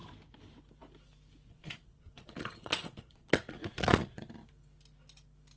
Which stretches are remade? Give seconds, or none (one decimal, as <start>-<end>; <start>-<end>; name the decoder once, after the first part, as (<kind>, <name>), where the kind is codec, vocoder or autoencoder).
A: 1.5-4.3 (vocoder, Vocos)